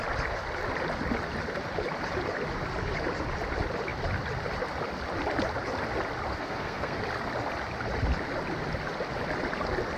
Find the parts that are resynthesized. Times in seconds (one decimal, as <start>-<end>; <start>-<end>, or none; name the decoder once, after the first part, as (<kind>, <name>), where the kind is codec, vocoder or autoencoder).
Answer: 6.3-7.0 (codec, SNAC)